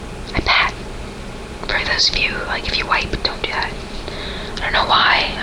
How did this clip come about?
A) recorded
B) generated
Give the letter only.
A